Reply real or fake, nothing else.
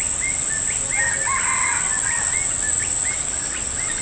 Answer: real